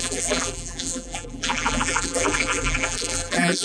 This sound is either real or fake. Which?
fake